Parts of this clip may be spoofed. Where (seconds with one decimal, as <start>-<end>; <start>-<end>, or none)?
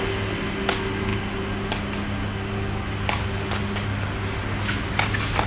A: none